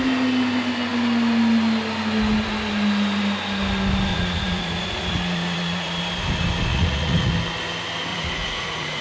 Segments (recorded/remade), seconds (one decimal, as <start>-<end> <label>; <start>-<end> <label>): 0.0-4.1 recorded; 4.1-6.0 remade; 6.0-6.7 recorded; 6.7-7.3 remade; 7.3-8.1 recorded; 8.1-9.0 remade